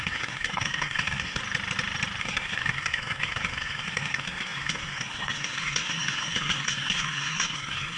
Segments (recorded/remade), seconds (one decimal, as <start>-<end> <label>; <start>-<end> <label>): 0.0-1.4 remade; 1.4-2.2 recorded; 2.2-8.0 remade